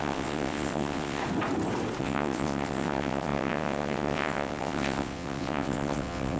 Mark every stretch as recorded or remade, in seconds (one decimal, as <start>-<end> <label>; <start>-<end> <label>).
0.0-1.2 remade; 1.2-2.0 recorded; 2.0-6.4 remade